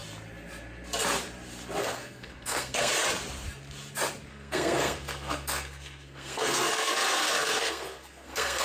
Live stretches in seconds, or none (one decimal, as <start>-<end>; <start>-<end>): 0.0-1.8; 2.9-4.3